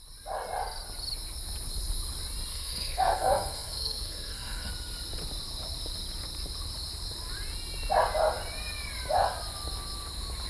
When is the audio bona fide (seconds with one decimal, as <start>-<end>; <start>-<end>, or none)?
0.0-2.5; 4.7-10.5